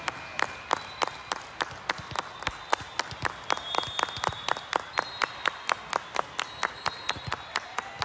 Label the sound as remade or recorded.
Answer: recorded